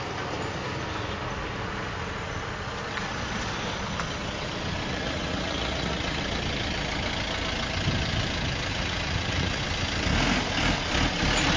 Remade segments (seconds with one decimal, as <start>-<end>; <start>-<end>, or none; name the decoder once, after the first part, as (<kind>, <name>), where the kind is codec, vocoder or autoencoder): 4.9-6.2 (vocoder, Vocos); 8.7-9.6